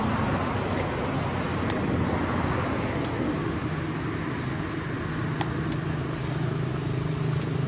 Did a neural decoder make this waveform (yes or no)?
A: no